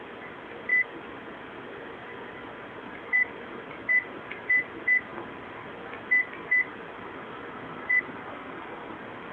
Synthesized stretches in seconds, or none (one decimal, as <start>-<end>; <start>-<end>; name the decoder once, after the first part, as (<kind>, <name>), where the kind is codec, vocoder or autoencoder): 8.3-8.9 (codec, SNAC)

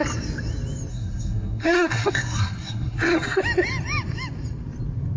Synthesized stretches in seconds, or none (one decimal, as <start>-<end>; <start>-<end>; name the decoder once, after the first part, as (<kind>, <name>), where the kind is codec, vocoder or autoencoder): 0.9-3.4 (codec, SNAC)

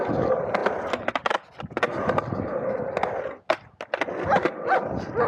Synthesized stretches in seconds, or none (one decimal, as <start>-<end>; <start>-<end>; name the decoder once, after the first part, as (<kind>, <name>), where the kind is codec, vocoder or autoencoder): none

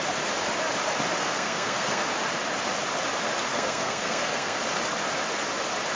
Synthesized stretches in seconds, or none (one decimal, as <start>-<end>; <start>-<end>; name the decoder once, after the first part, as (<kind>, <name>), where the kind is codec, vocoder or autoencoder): 1.2-2.1 (codec, SNAC); 3.5-4.6

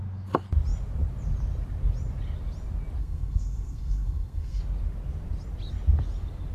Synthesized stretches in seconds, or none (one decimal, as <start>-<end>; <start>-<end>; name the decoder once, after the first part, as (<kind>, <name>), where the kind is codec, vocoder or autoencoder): 3.0-4.6 (codec, SNAC)

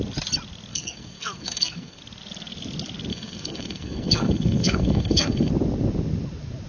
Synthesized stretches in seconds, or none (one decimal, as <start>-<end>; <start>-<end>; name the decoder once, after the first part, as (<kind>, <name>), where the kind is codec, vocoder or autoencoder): 0.7-2.0 (codec, SNAC); 3.1-5.5

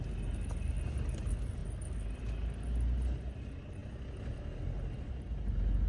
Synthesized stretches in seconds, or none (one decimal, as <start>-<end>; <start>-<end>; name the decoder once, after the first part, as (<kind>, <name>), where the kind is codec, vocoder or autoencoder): none